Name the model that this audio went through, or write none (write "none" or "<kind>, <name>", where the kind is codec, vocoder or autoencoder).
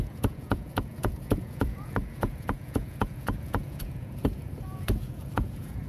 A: vocoder, Vocos